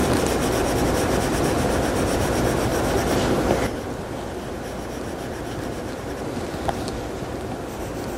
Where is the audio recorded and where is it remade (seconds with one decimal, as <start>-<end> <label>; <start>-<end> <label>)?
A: 0.0-0.8 recorded; 0.8-2.7 remade; 2.7-5.2 recorded; 5.2-8.2 remade